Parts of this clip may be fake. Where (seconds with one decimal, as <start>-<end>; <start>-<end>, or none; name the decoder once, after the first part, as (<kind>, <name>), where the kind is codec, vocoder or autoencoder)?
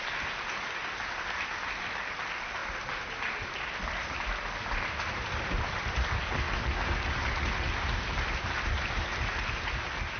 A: none